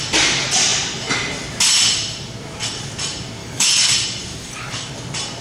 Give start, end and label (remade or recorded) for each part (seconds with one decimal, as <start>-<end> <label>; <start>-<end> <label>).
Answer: 0.0-3.4 recorded; 3.4-3.9 remade; 3.9-4.3 recorded; 4.3-4.9 remade; 4.9-5.4 recorded